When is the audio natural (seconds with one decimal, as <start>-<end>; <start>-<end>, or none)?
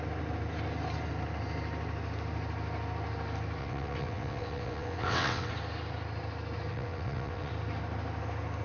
0.0-3.6; 5.5-6.7; 7.5-8.6